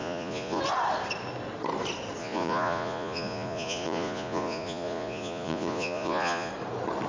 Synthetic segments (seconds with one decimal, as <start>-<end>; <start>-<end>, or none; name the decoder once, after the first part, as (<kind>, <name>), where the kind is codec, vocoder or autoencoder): 0.0-0.6 (vocoder, Vocos); 2.2-6.5